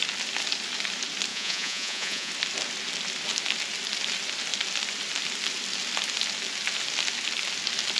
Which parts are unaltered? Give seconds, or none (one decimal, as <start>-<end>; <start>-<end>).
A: 0.0-1.3; 2.3-8.0